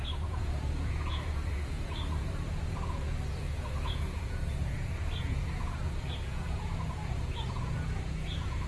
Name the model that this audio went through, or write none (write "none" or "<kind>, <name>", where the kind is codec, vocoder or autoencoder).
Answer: vocoder, Vocos